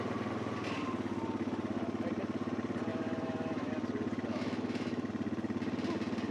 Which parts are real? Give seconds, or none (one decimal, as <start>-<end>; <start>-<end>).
0.0-2.9; 3.7-4.3; 5.1-6.3